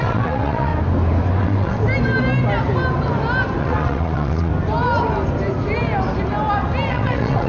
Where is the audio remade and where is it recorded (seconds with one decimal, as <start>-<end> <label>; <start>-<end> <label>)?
0.0-0.7 remade; 0.7-1.4 recorded; 1.4-1.8 remade; 1.8-3.6 recorded; 3.6-4.5 remade; 4.5-6.9 recorded; 6.9-7.5 remade